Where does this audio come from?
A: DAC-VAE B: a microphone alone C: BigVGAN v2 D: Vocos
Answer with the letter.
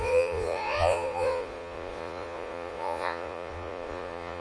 D